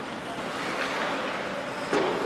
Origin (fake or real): real